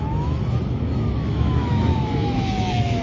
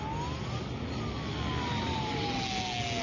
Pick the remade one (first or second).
first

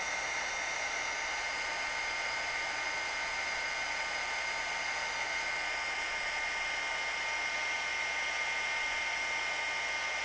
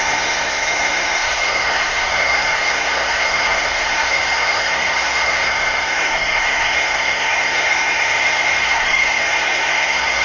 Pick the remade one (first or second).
second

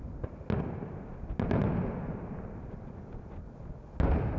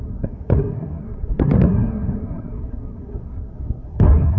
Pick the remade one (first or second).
second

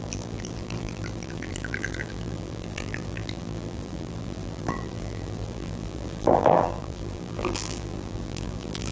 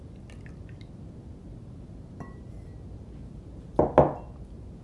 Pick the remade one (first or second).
first